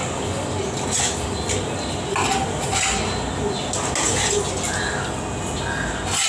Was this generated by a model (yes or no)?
no